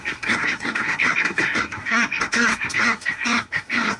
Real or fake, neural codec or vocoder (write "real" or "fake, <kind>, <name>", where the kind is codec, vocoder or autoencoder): fake, codec, SNAC